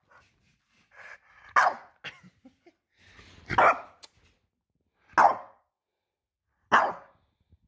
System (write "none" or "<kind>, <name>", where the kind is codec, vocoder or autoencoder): none